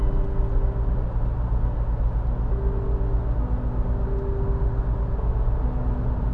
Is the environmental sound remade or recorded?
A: recorded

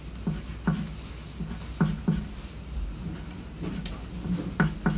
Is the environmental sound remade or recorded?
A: recorded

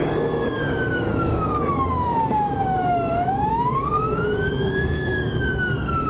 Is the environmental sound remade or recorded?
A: remade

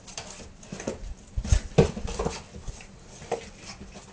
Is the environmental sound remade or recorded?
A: recorded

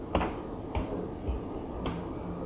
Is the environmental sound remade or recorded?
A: recorded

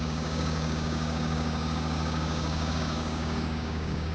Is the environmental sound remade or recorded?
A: remade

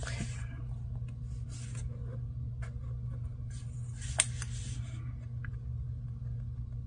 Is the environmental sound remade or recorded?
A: recorded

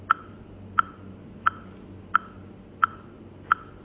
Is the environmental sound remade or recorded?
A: recorded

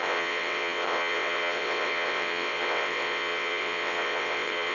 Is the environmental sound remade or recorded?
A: remade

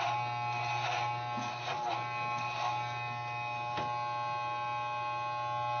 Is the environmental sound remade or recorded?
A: recorded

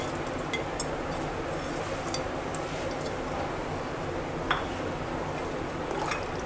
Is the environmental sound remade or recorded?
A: recorded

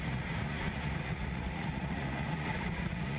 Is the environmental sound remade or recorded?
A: remade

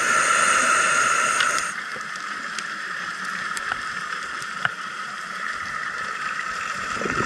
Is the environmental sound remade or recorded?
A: remade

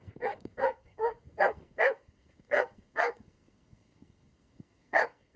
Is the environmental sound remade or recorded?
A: remade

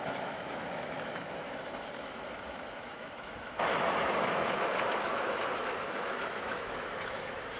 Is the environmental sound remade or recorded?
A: remade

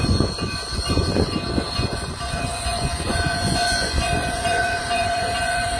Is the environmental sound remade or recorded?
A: remade